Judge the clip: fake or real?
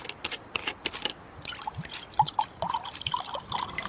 real